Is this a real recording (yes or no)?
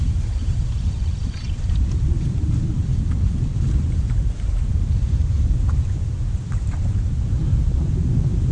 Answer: no